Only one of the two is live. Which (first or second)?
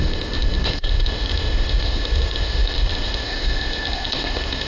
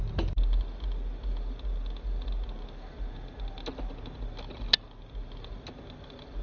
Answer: second